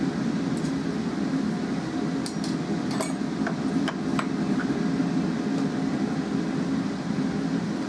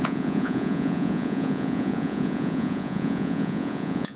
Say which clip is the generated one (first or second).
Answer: second